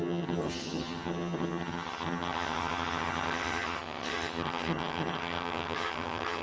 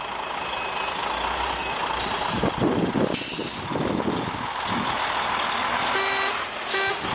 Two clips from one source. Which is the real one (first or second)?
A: second